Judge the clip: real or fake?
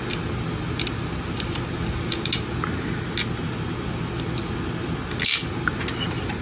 real